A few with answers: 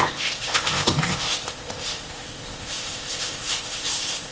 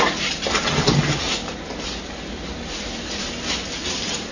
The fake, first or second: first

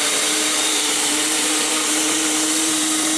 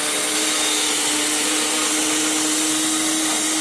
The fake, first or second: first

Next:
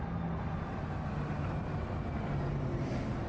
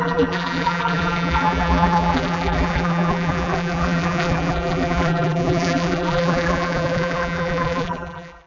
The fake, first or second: second